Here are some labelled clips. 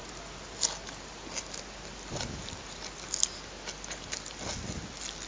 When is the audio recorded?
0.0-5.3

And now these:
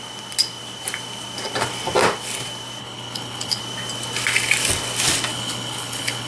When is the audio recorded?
0.0-2.8; 3.6-5.3

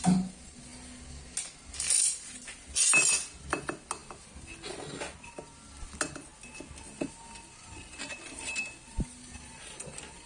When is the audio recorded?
0.0-10.3